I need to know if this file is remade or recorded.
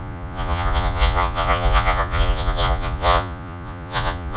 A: remade